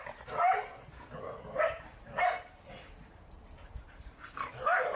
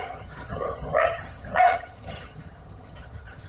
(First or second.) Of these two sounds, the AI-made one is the second